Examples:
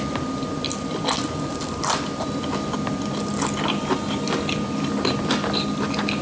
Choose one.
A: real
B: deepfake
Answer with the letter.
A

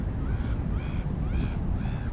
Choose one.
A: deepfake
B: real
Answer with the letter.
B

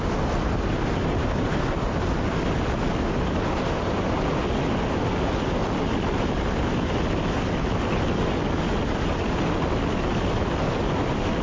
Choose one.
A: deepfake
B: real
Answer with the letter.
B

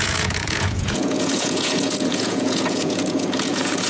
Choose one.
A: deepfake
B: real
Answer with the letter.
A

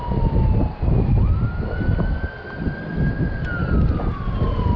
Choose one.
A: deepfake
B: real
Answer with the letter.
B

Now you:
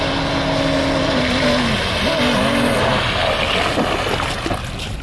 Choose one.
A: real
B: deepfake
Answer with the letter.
A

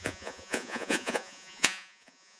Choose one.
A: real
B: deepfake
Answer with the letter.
B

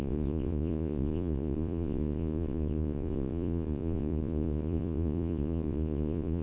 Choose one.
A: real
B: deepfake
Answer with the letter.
B